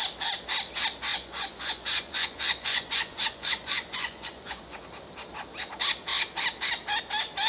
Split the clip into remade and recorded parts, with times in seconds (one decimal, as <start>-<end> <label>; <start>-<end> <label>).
0.0-1.1 recorded; 1.1-4.8 remade; 4.8-7.5 recorded